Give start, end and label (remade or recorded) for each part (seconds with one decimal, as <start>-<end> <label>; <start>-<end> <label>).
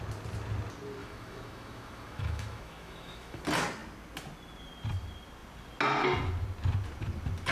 0.0-1.0 recorded; 1.0-3.4 remade; 3.4-7.5 recorded